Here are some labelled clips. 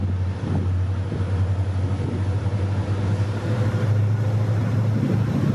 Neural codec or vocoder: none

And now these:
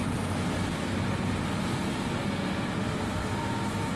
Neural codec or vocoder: none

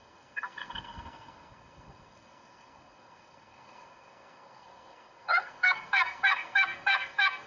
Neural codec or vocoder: codec, SNAC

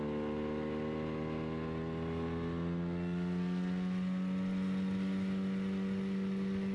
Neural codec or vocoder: none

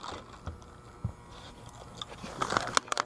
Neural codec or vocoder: none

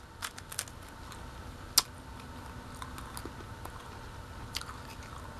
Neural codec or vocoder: none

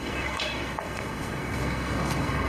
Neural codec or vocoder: codec, SNAC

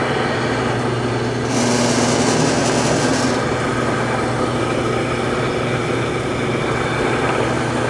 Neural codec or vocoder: none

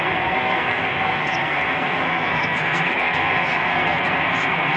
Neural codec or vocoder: codec, SNAC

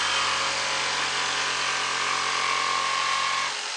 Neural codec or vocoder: none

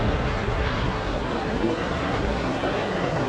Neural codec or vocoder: codec, SNAC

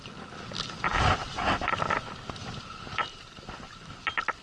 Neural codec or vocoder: none